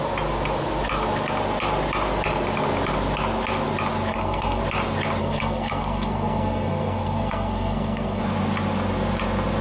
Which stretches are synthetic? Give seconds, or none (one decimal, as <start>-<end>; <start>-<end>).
4.1-4.6; 5.2-8.2